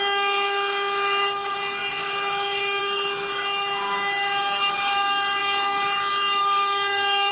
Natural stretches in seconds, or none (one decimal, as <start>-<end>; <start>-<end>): none